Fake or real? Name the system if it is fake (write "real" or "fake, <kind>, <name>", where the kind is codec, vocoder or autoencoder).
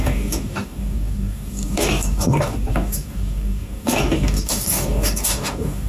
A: fake, codec, DAC